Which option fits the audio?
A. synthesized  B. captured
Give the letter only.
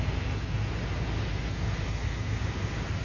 B